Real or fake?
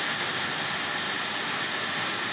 real